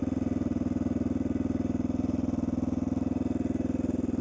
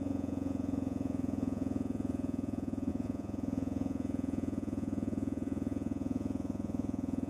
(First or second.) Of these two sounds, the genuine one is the first